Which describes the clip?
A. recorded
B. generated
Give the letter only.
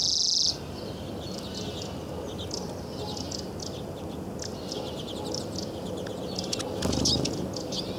A